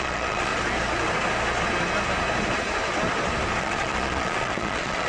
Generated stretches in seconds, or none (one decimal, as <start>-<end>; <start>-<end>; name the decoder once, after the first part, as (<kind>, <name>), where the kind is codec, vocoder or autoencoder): 0.0-0.5 (vocoder, Vocos); 3.6-5.1